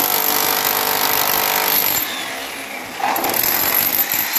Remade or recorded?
recorded